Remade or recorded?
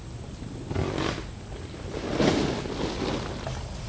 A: recorded